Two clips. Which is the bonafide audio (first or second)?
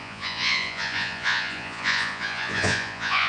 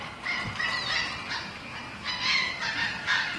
second